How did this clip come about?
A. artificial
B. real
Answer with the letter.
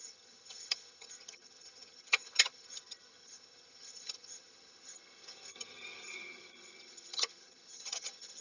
A